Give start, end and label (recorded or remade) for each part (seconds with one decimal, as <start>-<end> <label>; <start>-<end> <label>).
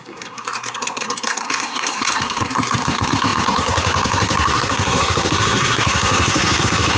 0.0-7.0 remade